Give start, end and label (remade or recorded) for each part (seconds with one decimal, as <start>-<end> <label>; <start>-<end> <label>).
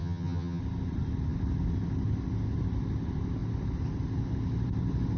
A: 0.0-0.6 remade; 0.6-5.2 recorded